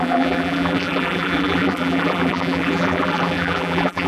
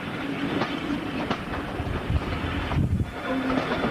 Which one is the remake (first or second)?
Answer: first